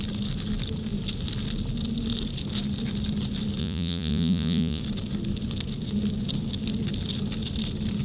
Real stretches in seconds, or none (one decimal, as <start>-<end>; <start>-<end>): 0.0-3.6; 4.8-8.0